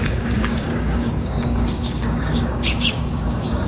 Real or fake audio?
fake